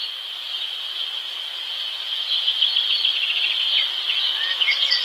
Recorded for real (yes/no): yes